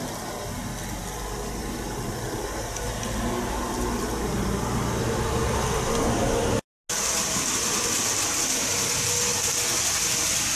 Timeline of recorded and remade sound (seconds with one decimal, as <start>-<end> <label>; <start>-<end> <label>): 0.0-10.6 recorded